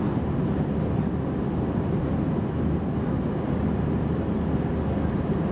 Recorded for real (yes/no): yes